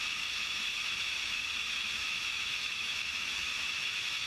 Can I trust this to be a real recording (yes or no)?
no